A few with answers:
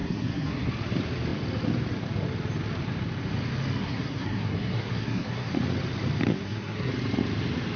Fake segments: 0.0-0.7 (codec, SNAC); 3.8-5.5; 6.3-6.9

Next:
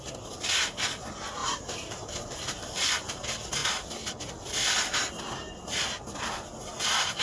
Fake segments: 1.4-2.9 (vocoder, BigVGAN v2)

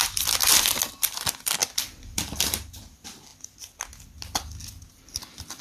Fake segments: 0.0-0.4 (vocoder, BigVGAN v2); 0.9-3.3; 4.9-5.6

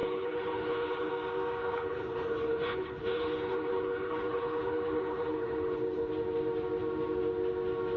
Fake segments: 0.0-1.1 (codec, HILCodec); 1.6-6.1

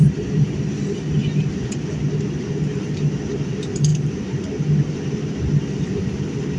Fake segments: none

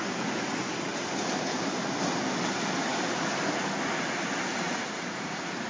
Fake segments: 4.5-5.7 (vocoder, Vocos)

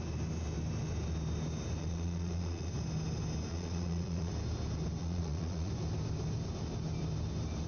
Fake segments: 1.8-2.7 (vocoder, Vocos); 3.5-4.3; 5.0-5.7